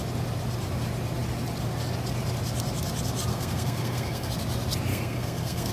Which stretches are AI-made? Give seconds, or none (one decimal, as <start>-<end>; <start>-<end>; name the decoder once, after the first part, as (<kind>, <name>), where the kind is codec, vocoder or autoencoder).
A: 3.3-4.3 (codec, SNAC); 4.9-5.7

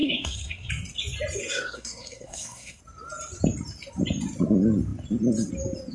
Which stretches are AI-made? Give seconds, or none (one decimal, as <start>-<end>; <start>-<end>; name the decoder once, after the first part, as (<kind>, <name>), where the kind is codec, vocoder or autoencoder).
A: 0.0-0.7 (codec, SNAC); 1.4-2.8

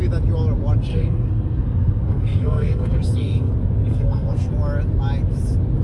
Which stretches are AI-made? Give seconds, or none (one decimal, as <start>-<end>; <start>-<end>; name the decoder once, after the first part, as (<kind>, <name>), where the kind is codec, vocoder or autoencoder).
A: 0.9-3.5 (codec, SNAC); 3.9-4.5

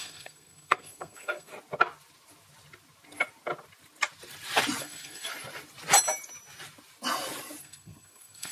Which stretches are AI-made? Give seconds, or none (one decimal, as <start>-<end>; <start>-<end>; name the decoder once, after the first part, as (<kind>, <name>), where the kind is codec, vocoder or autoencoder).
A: 0.0-1.5 (codec, SNAC); 4.8-5.3; 7.6-8.5

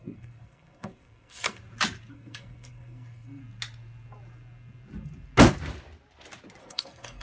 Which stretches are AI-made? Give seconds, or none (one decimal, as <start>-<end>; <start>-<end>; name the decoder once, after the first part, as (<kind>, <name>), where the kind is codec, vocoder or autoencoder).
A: 0.0-1.6 (codec, SNAC); 2.1-3.4; 6.6-7.2

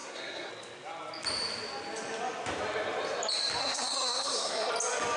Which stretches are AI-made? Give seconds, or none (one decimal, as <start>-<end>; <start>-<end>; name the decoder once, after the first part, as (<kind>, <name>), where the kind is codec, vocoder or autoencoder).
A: 0.0-0.5 (codec, SNAC); 3.6-4.7